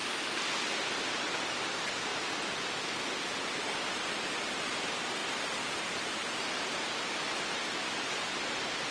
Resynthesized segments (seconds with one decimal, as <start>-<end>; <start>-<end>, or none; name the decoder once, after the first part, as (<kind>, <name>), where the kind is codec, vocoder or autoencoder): 1.5-5.2 (vocoder, BigVGAN v2); 6.3-8.9